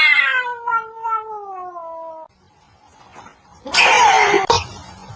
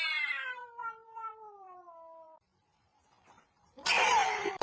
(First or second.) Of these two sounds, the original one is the first